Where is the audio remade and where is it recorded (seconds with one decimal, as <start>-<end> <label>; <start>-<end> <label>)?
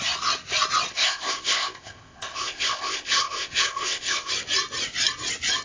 0.0-0.9 recorded; 0.9-4.3 remade; 4.3-5.6 recorded